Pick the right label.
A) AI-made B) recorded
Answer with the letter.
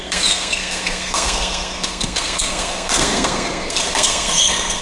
A